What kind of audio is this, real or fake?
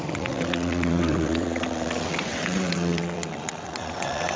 fake